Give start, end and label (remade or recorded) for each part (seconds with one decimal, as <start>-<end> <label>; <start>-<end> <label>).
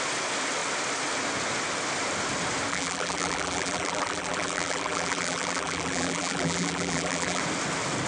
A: 0.0-2.7 recorded; 2.7-7.4 remade; 7.4-8.1 recorded